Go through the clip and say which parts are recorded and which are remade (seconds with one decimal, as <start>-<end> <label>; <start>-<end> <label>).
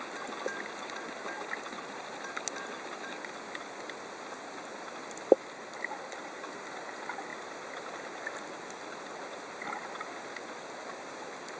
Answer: 0.0-11.6 recorded